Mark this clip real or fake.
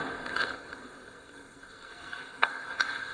fake